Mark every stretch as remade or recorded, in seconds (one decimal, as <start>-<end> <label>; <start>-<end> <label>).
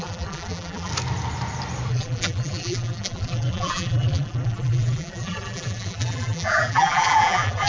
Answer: 0.0-0.9 remade; 0.9-1.9 recorded; 1.9-7.7 remade